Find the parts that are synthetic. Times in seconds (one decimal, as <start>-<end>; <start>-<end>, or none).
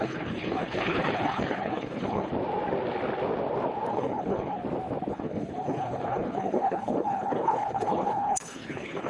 0.0-2.3; 3.9-4.6; 5.1-9.1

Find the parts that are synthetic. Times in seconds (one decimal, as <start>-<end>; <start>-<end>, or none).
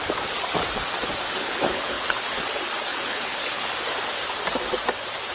1.4-2.2; 2.9-3.7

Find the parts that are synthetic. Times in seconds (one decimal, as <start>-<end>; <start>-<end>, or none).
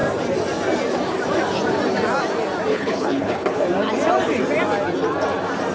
2.7-3.6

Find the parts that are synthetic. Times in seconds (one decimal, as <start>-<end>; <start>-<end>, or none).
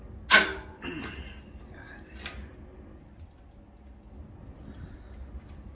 none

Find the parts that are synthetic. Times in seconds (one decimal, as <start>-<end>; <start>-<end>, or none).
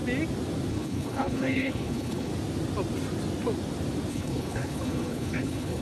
0.7-2.3; 4.1-5.8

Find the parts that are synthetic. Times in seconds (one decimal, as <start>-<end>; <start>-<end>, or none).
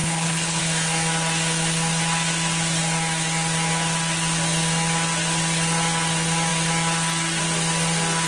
0.0-0.6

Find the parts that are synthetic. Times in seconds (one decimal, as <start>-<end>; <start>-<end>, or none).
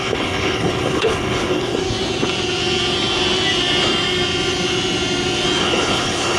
0.0-1.8; 5.6-6.4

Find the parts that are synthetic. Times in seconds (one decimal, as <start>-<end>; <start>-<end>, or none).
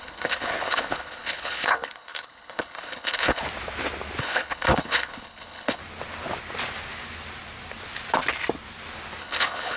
0.0-3.4; 4.2-5.8; 9.2-9.8